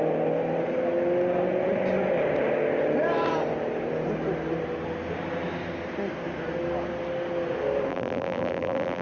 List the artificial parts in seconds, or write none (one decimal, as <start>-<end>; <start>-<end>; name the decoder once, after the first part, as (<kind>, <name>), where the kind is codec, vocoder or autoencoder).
7.9-9.0 (vocoder, BigVGAN v2)